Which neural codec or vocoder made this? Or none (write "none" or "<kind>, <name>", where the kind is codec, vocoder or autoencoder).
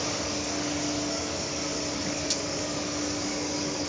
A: codec, DAC